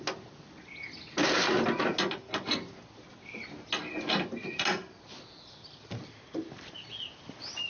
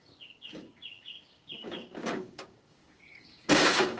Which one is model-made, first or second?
second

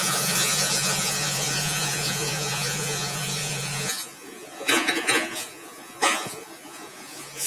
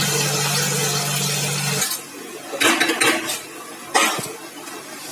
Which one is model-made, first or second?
first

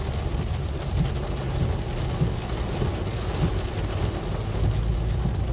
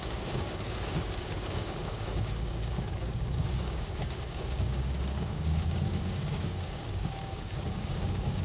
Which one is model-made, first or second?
second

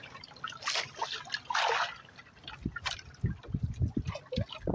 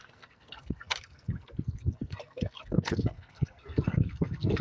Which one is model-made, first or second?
second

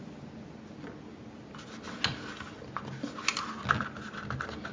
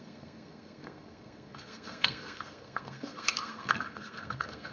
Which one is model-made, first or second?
second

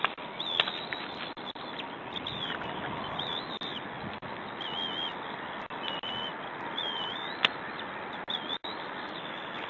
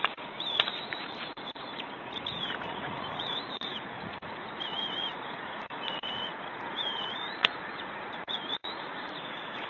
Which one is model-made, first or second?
second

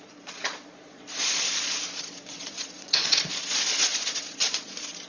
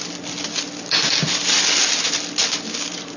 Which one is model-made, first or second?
first